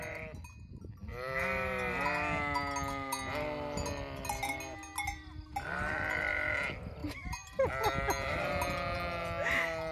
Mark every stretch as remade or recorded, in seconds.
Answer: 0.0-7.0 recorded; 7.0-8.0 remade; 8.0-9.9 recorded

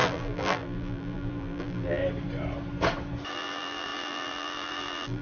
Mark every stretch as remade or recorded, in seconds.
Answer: 0.0-2.0 remade; 2.0-3.3 recorded; 3.3-5.2 remade

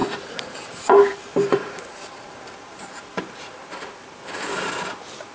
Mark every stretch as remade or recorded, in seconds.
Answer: 0.0-3.2 remade; 3.2-5.3 recorded

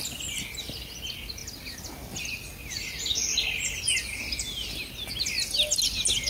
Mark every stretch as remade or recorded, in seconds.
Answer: 0.0-6.3 recorded

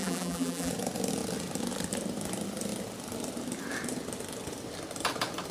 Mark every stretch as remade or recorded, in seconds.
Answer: 0.0-0.7 remade; 0.7-5.5 recorded

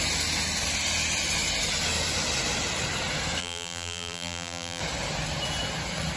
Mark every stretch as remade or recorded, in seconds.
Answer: 0.0-3.4 recorded; 3.4-4.8 remade; 4.8-6.2 recorded